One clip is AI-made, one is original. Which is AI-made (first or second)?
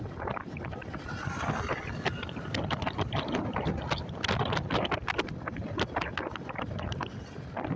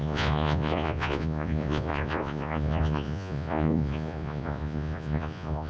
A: second